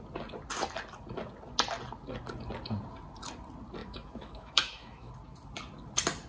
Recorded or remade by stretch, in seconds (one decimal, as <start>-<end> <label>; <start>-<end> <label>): 0.0-3.8 recorded; 3.8-5.1 remade; 5.1-6.3 recorded